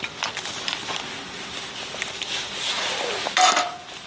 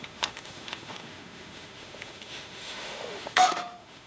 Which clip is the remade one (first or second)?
second